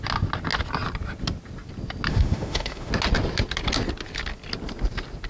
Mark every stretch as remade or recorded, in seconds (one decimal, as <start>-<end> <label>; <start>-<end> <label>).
0.0-2.1 recorded; 2.1-2.9 remade; 2.9-5.3 recorded